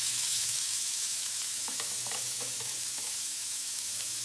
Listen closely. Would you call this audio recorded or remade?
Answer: remade